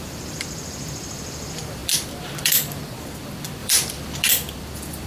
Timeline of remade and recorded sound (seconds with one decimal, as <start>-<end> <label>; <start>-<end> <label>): 0.0-5.1 remade